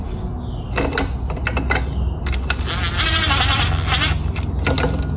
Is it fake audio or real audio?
real